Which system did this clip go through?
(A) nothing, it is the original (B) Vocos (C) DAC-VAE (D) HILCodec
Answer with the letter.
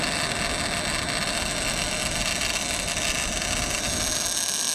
A